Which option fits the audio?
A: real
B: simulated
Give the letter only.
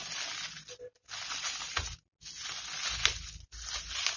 A